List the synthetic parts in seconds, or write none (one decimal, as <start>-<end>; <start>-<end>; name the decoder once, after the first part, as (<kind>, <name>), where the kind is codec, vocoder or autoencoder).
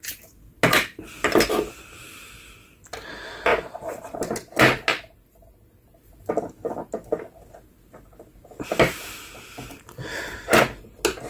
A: none